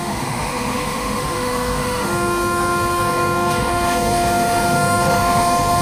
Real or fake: fake